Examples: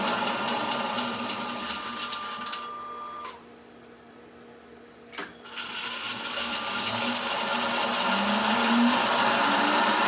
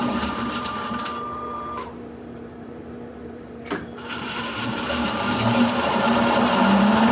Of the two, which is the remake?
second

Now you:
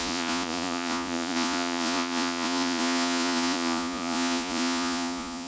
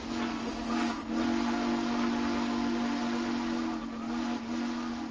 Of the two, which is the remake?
first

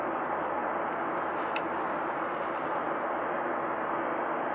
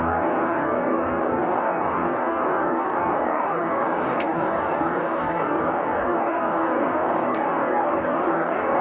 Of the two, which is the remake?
second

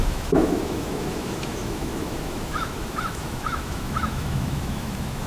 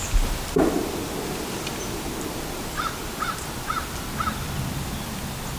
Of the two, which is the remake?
first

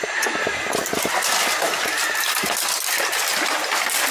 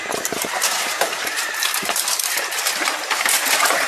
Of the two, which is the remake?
second